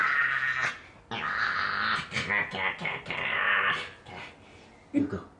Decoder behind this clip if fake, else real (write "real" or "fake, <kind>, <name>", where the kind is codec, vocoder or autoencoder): real